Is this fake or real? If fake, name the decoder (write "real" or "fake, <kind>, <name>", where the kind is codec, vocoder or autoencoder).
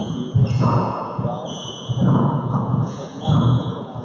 fake, vocoder, Vocos